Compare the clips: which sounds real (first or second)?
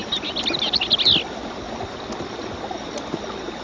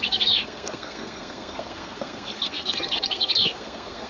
first